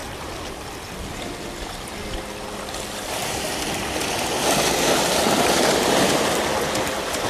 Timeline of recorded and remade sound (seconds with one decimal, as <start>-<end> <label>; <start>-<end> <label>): 0.0-7.3 recorded